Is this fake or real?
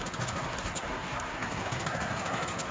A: fake